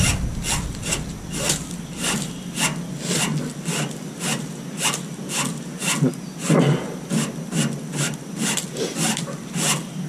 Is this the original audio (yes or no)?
yes